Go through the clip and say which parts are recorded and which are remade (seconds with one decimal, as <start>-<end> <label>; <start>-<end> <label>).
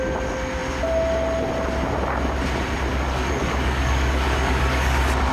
0.0-2.9 recorded; 2.9-5.3 remade